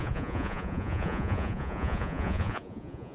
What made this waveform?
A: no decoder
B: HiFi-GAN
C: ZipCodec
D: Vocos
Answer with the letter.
D